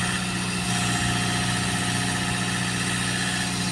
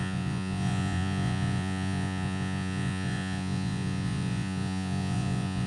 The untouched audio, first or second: first